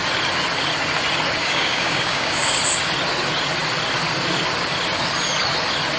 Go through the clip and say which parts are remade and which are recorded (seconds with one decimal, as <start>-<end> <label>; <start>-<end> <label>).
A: 0.0-1.4 recorded; 1.4-2.6 remade; 2.6-6.0 recorded